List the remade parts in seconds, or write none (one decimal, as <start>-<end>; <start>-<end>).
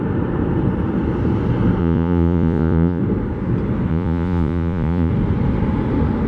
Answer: 1.8-3.0; 3.9-5.1